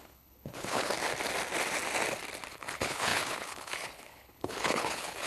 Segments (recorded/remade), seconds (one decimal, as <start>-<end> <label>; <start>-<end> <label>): 0.0-0.9 remade; 0.9-2.5 recorded; 2.5-5.3 remade